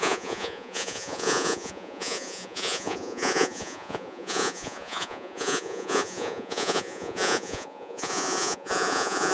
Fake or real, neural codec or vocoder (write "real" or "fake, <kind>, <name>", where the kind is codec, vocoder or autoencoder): fake, vocoder, Vocos